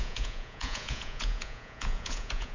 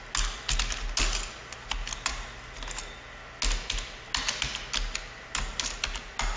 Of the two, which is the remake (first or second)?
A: first